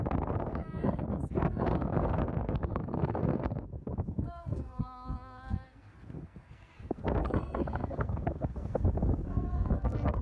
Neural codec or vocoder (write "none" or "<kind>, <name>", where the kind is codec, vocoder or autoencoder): codec, SNAC